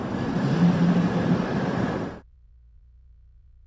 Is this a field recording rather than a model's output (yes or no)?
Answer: no